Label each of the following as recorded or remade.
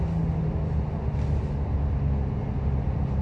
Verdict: recorded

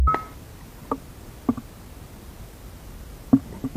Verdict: recorded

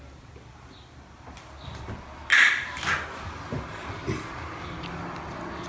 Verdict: recorded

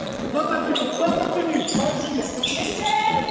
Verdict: remade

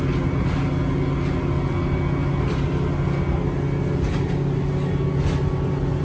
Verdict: recorded